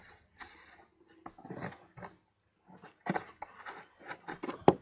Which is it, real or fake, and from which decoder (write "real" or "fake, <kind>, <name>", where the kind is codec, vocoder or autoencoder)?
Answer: real